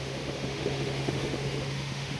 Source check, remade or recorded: remade